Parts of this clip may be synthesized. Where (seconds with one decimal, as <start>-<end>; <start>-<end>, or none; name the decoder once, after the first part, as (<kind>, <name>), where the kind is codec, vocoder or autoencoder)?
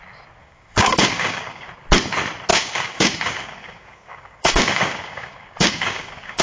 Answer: 0.4-1.7 (codec, DAC); 2.5-6.4